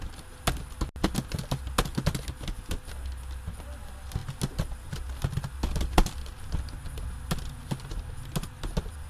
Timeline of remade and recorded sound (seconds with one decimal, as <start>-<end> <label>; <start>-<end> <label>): 0.0-9.1 recorded